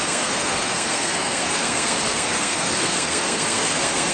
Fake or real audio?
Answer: fake